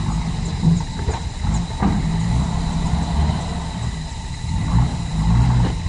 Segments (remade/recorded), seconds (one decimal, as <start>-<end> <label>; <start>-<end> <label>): 0.0-0.5 recorded; 0.5-1.3 remade; 1.3-5.9 recorded